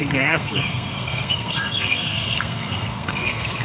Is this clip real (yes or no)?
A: no